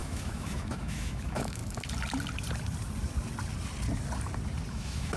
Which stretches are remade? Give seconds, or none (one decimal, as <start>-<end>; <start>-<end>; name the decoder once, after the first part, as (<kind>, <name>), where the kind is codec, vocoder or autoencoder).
0.0-1.6 (autoencoder, DAC-VAE); 4.7-5.2